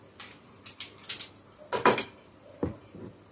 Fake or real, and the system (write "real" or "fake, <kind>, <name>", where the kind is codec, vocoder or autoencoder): real